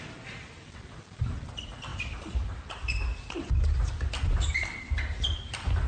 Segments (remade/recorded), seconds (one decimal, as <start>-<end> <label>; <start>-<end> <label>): 0.0-5.9 recorded